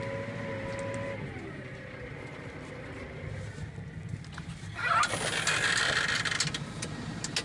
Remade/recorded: recorded